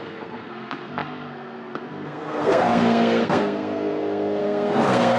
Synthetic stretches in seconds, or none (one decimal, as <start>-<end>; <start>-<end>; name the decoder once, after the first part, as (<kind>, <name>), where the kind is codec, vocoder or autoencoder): 0.0-5.2 (codec, SNAC)